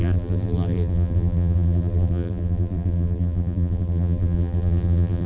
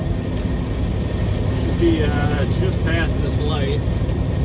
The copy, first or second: first